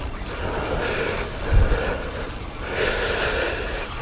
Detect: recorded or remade recorded